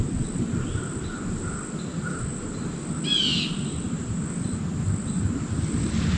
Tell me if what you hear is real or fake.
real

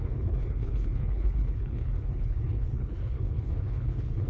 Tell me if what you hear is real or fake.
fake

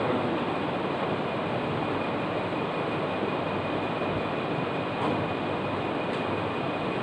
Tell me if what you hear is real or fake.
real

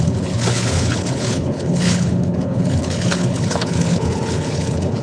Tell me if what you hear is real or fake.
fake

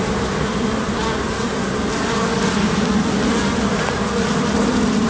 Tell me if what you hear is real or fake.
real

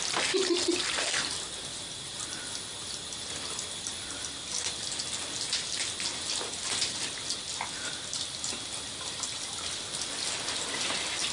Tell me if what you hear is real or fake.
real